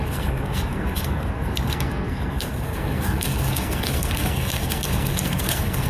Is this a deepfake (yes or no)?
yes